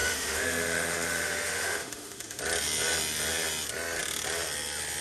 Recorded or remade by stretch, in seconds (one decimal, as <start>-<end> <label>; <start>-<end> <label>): 0.0-2.4 remade; 2.4-5.0 recorded

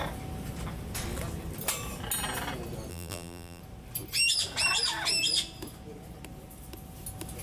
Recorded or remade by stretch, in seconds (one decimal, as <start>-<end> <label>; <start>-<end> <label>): 0.0-2.9 recorded; 2.9-3.6 remade; 3.6-7.4 recorded

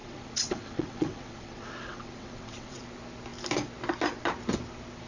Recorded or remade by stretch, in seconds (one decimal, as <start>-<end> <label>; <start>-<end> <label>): 0.0-2.8 remade; 2.8-5.1 recorded

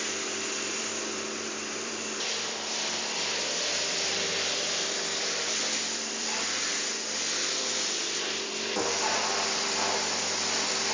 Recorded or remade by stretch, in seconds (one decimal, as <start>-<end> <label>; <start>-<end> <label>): 0.0-6.7 remade; 6.7-7.4 recorded; 7.4-10.9 remade

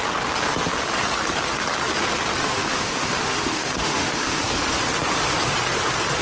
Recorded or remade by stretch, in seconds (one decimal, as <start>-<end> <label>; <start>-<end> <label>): 0.0-2.4 recorded; 2.4-4.4 remade; 4.4-6.2 recorded

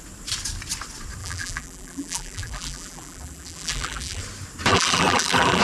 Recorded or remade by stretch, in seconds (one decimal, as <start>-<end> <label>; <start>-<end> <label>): 0.0-1.2 recorded; 1.2-4.2 remade; 4.2-4.7 recorded; 4.7-5.6 remade

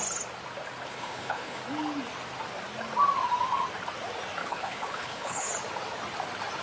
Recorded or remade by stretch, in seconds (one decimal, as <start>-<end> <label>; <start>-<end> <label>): 0.0-0.9 recorded; 0.9-1.6 remade; 1.6-4.4 recorded; 4.4-5.5 remade; 5.5-6.6 recorded